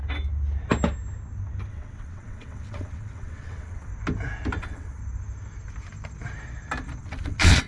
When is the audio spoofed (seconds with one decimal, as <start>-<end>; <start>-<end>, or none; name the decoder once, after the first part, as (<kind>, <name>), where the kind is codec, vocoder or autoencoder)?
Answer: 1.7-3.9 (vocoder, WaveNeXt); 4.6-5.0; 7.0-7.7